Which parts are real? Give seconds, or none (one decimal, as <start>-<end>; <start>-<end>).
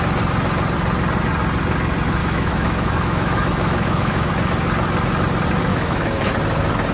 0.0-2.2; 4.3-5.7; 6.3-6.9